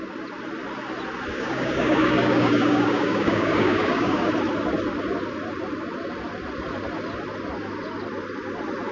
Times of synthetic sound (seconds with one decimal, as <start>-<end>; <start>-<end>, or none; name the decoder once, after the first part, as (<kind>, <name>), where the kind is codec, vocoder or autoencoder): 1.3-4.3 (codec, DAC)